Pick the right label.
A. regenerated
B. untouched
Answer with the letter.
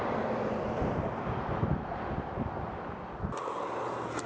B